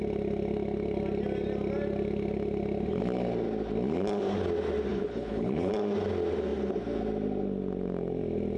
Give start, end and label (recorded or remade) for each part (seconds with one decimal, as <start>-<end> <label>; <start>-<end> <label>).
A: 0.0-4.9 recorded; 4.9-5.7 remade; 5.7-8.6 recorded